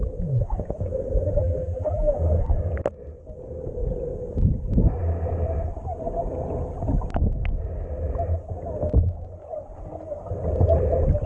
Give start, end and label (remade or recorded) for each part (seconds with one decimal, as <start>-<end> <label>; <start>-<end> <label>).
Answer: 0.0-1.4 recorded; 1.4-2.1 remade; 2.1-11.3 recorded